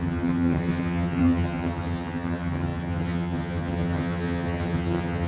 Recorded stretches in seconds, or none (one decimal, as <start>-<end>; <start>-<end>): none